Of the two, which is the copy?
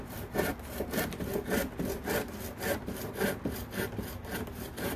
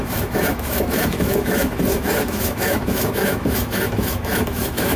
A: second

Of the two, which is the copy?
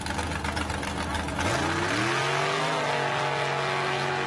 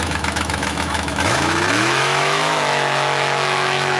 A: second